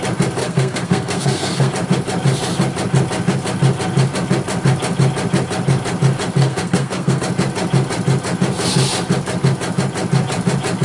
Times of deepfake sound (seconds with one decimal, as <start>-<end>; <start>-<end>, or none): 0.4-1.7; 6.4-7.2